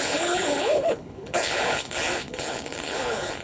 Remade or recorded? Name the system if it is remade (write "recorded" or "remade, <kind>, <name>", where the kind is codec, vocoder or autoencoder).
remade, codec, HILCodec